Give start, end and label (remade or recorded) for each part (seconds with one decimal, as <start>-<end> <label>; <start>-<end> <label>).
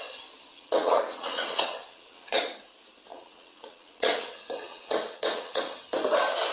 0.0-0.5 recorded; 0.5-2.4 remade; 2.4-3.1 recorded; 3.1-5.8 remade; 5.8-6.5 recorded